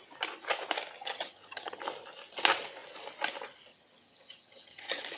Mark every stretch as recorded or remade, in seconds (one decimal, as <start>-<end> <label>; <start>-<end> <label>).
0.0-1.0 recorded; 1.0-1.8 remade; 1.8-3.7 recorded; 3.7-5.2 remade